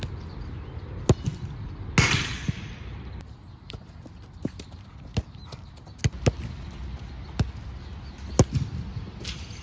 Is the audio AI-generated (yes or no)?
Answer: no